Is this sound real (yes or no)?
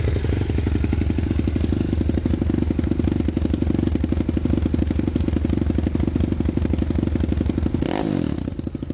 yes